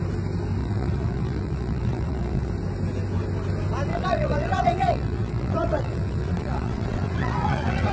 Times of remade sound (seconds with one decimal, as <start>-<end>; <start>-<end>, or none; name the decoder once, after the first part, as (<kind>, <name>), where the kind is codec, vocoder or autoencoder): 0.6-2.5 (vocoder, WaveNeXt); 3.9-7.9